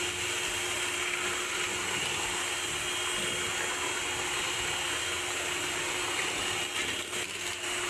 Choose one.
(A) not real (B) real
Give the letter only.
B